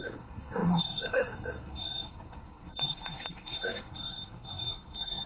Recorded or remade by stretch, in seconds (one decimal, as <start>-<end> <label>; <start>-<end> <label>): 0.0-5.3 remade